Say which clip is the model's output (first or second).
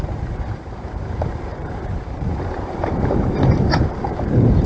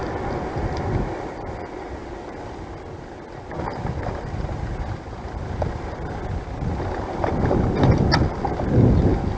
first